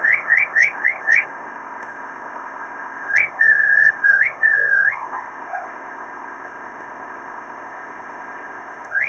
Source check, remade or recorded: remade